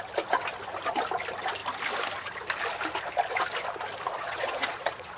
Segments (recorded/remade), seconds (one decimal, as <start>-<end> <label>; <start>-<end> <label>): 0.0-4.1 recorded; 4.1-5.2 remade